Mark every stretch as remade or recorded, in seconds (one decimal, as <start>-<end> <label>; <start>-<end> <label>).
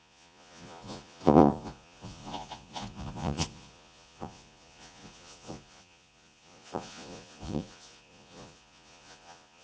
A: 0.0-9.6 remade